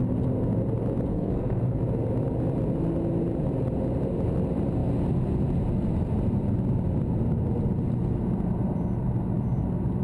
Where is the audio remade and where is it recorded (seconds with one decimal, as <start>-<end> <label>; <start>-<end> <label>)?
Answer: 0.0-1.1 recorded; 1.1-1.8 remade; 1.8-10.0 recorded